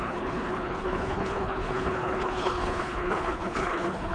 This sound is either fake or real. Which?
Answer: fake